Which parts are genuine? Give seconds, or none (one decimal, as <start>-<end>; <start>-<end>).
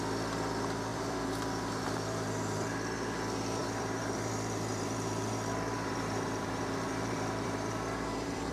0.0-0.9; 2.7-3.6